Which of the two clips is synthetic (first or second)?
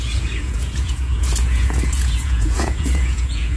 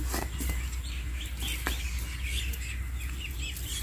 first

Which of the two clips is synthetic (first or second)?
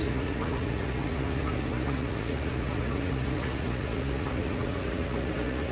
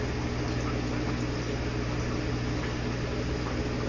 first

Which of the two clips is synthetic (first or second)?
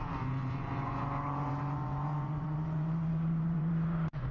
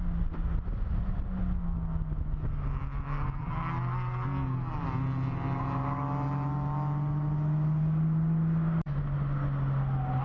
first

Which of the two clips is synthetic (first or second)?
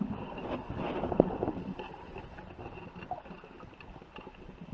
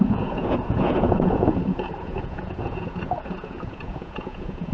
second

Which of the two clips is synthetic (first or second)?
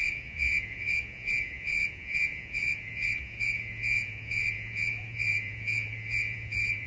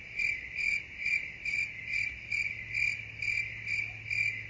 first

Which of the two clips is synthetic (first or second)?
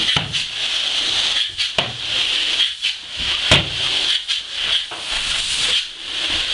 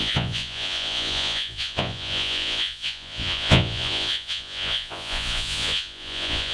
second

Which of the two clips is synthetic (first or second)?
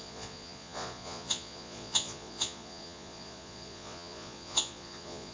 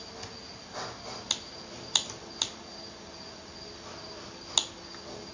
first